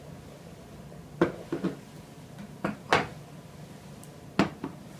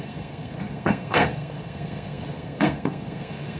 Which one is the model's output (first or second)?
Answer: second